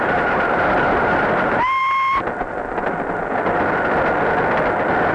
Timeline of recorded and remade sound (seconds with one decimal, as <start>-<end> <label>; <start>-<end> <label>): 0.0-1.8 remade; 1.8-5.1 recorded